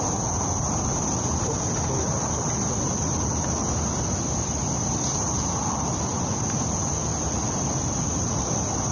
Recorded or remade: recorded